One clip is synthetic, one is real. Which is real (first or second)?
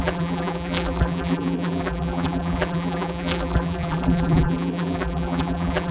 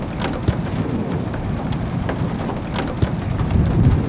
second